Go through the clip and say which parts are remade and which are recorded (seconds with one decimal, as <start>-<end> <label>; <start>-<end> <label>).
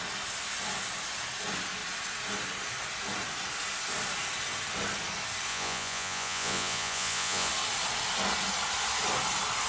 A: 0.0-5.5 recorded; 5.5-7.5 remade; 7.5-9.7 recorded